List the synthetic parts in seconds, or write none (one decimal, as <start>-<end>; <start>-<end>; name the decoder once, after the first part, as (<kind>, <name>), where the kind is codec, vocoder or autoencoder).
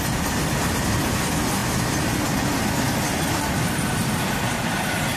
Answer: none